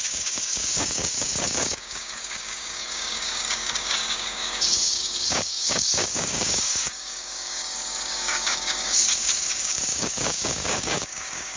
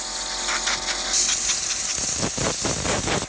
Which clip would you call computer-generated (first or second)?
first